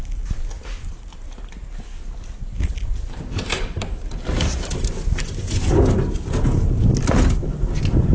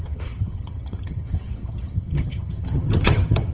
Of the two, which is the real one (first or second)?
first